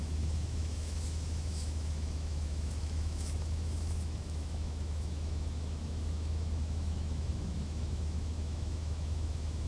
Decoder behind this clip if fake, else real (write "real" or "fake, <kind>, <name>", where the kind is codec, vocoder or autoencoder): fake, autoencoder, DAC-VAE